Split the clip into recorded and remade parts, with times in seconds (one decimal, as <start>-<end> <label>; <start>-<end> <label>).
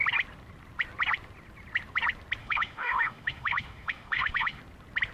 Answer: 0.0-2.4 recorded; 2.4-4.6 remade; 4.6-5.1 recorded